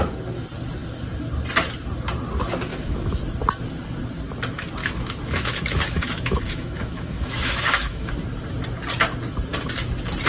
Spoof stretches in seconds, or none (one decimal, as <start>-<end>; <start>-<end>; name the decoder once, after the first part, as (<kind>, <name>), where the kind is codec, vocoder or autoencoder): 2.7-3.2 (autoencoder, DAC-VAE); 4.8-8.1